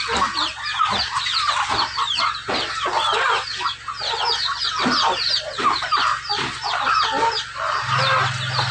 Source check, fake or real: real